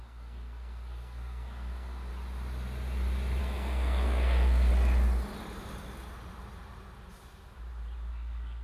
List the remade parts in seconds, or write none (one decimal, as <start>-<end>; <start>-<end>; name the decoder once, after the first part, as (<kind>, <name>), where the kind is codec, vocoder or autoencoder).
0.0-2.1 (codec, SNAC); 3.4-4.7; 8.1-8.6